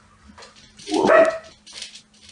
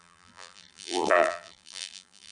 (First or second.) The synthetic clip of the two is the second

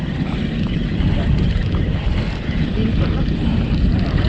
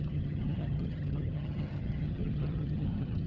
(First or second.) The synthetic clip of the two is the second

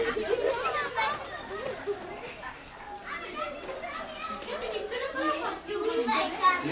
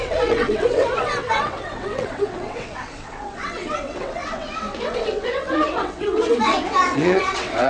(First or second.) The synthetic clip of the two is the second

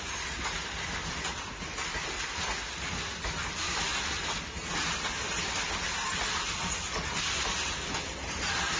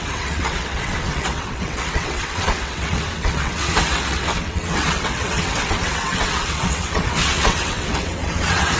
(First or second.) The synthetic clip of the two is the second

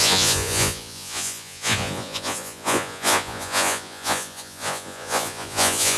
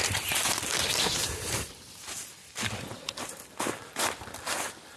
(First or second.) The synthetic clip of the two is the first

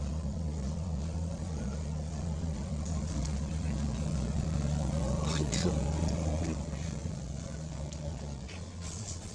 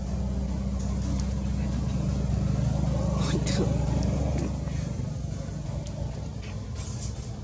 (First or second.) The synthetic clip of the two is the first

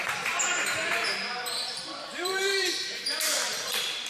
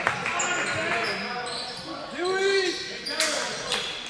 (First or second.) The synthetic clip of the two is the first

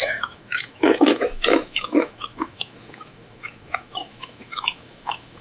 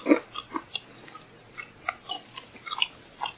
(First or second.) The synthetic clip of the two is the first